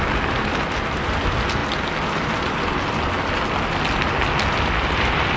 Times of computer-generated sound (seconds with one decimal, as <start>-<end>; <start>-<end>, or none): none